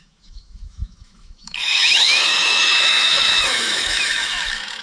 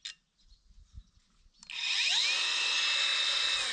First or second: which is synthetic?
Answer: first